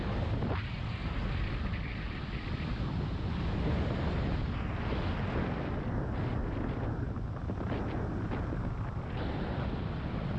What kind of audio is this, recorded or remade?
recorded